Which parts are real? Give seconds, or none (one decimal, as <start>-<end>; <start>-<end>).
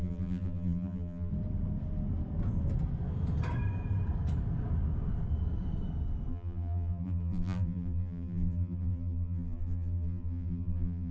1.3-6.3